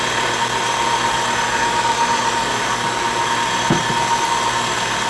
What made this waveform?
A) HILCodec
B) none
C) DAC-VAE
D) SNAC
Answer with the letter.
B